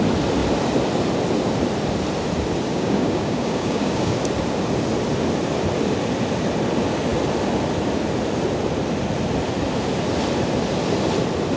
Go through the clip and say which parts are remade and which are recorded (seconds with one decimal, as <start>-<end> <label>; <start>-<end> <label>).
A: 0.0-2.7 recorded; 2.7-4.1 remade; 4.1-11.6 recorded

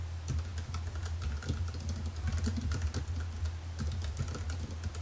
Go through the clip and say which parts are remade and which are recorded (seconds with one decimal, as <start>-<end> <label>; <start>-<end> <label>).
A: 0.0-5.0 recorded

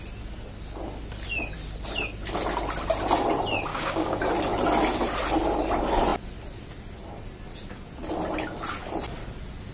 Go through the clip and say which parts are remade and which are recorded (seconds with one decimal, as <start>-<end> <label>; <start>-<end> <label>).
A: 0.0-3.7 recorded; 3.7-4.2 remade; 4.2-9.7 recorded

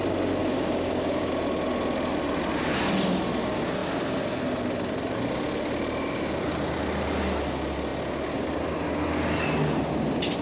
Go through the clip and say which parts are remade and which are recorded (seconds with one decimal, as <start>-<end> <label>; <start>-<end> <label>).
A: 0.0-0.4 recorded; 0.4-1.3 remade; 1.3-10.4 recorded

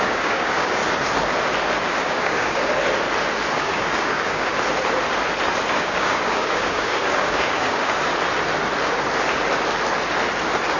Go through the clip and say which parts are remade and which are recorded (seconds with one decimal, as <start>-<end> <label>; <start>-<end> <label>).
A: 0.0-0.8 remade; 0.8-1.9 recorded; 1.9-2.6 remade; 2.6-3.5 recorded; 3.5-4.5 remade; 4.5-5.7 recorded; 5.7-8.1 remade; 8.1-10.8 recorded

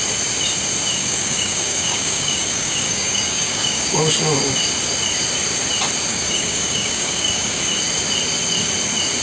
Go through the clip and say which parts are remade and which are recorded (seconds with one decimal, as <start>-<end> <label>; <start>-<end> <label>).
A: 0.0-1.0 recorded; 1.0-4.0 remade; 4.0-6.1 recorded; 6.1-7.6 remade; 7.6-9.2 recorded

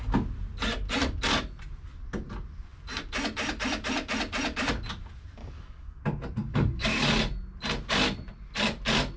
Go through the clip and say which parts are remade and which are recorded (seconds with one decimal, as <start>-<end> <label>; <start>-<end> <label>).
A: 0.0-5.4 recorded; 5.4-6.0 remade; 6.0-6.4 recorded; 6.4-7.1 remade; 7.1-9.2 recorded

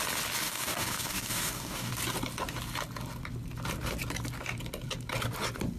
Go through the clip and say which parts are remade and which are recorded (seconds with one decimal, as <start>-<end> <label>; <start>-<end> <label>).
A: 0.0-0.4 recorded; 0.4-1.9 remade; 1.9-5.8 recorded